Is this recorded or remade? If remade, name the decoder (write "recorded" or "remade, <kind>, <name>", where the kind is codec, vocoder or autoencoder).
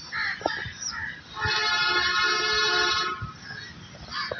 recorded